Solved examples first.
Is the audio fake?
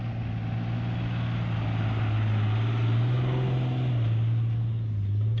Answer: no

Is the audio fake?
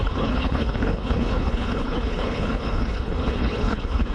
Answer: yes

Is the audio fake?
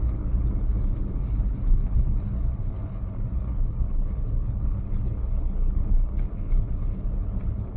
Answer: yes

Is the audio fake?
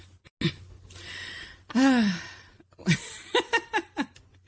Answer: no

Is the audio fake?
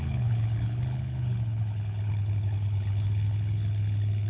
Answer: yes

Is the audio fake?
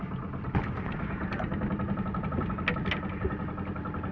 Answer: no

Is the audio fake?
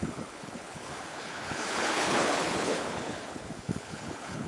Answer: yes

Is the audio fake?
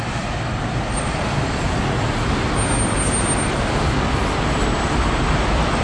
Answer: no